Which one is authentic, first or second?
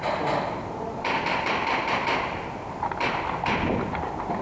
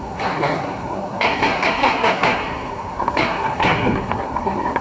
first